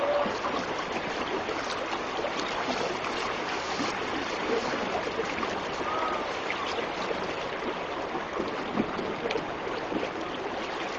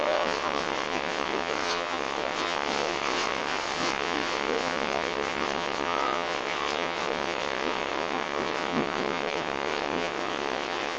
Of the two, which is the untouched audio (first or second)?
first